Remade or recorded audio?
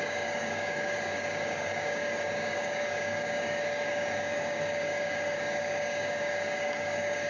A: remade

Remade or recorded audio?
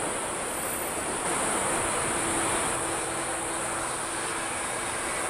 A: recorded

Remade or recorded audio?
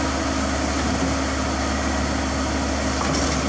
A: recorded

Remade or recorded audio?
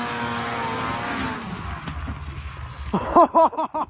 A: recorded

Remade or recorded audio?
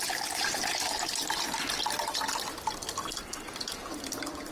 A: recorded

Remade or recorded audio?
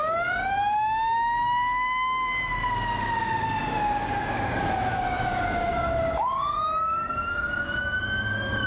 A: remade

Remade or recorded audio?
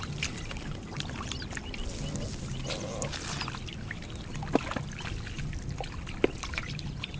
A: recorded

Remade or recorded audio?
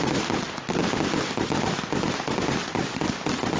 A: recorded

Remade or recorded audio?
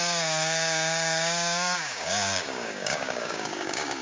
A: remade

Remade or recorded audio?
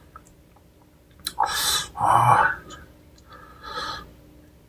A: recorded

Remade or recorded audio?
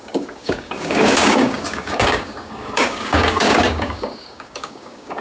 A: remade